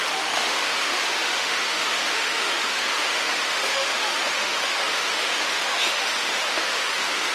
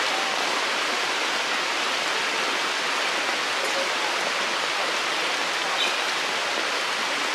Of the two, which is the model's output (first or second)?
first